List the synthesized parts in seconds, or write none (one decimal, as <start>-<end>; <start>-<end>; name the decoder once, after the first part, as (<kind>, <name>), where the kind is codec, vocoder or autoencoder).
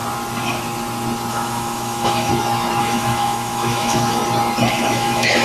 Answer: 1.3-2.3 (autoencoder, DAC-VAE); 2.8-4.2; 4.7-5.4